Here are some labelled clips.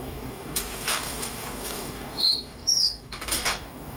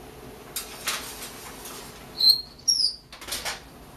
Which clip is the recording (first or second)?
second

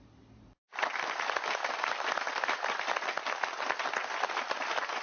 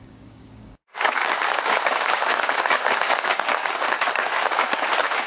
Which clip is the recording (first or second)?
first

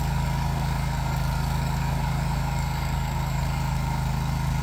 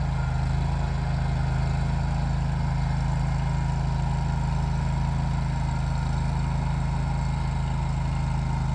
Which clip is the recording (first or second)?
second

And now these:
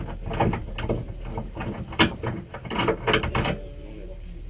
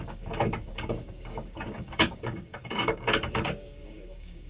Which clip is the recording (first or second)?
first